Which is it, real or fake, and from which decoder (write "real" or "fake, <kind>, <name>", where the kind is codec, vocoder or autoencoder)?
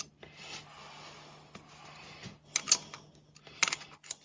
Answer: real